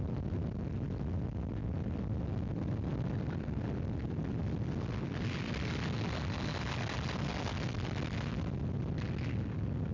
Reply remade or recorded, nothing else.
recorded